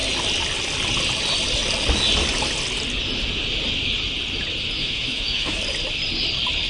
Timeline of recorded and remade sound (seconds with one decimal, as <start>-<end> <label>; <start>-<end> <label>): 0.0-4.8 recorded; 4.8-5.6 remade; 5.6-6.7 recorded

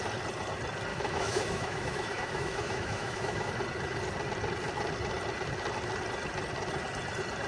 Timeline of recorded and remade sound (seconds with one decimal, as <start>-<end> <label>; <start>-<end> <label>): 0.0-0.9 recorded; 0.9-3.5 remade; 3.5-7.5 recorded